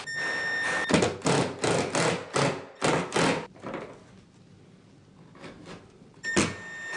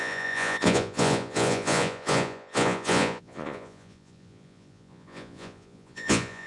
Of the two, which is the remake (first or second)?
second